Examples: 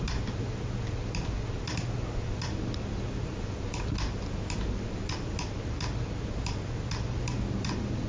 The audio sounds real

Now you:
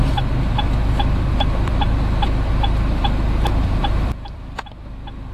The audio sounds fake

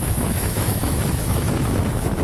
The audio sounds fake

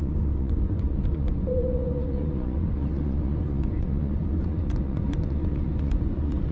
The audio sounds fake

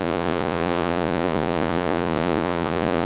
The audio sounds fake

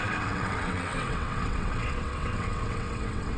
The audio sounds fake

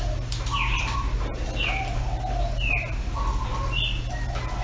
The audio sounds real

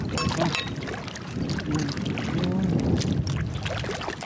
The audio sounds real